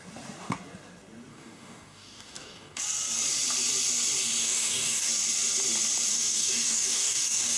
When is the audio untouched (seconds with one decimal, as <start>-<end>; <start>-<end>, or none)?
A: 0.0-1.3; 2.8-4.4; 5.1-6.1